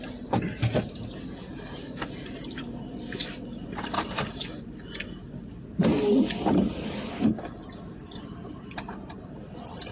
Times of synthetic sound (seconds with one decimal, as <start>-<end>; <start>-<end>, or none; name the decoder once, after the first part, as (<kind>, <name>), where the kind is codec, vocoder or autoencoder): 0.0-9.9 (vocoder, BigVGAN v2)